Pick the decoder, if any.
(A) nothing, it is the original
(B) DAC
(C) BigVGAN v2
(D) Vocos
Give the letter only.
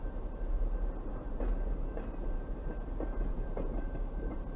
C